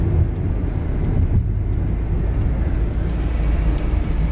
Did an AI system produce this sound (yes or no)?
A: no